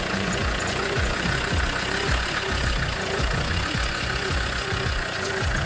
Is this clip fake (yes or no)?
yes